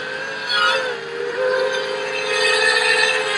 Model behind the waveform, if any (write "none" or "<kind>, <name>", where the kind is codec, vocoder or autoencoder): none